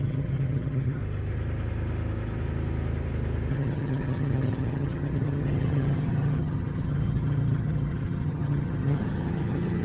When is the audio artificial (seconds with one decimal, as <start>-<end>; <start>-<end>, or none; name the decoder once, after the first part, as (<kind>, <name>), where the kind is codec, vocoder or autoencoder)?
0.0-1.0 (vocoder, HiFi-GAN); 3.5-9.8